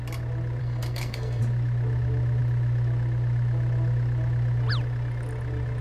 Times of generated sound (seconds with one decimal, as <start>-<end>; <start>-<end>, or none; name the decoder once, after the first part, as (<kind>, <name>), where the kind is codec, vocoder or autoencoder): 0.6-1.4 (codec, SNAC)